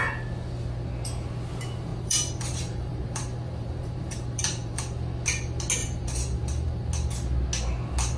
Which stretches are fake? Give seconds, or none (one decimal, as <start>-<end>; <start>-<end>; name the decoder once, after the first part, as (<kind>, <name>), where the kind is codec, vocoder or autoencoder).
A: 1.9-4.8 (vocoder, BigVGAN v2); 5.8-6.8